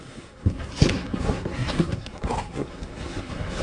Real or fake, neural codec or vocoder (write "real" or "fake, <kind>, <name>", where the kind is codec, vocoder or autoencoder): fake, codec, SNAC